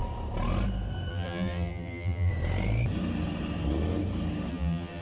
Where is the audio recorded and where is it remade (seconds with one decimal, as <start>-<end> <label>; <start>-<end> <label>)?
0.0-1.1 recorded; 1.1-2.3 remade; 2.3-4.5 recorded; 4.5-5.0 remade